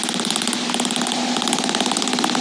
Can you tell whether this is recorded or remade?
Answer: recorded